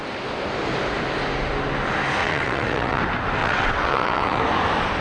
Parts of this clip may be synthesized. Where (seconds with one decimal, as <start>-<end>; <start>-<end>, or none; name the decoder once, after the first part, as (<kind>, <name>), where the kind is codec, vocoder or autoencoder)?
2.2-3.0 (vocoder, WaveNeXt); 3.4-4.4